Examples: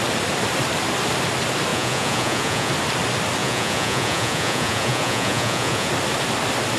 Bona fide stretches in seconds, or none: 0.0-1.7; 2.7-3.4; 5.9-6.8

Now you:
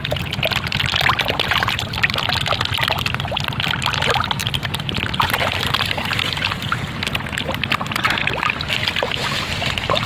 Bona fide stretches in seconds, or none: 0.0-10.1

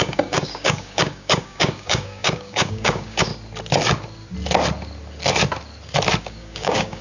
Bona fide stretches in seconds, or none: 3.3-6.2

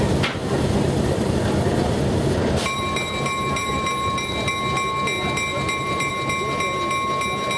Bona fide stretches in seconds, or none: 0.0-0.4; 4.5-5.5; 6.1-7.6

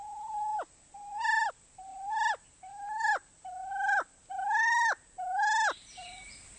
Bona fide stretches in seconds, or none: 0.0-6.6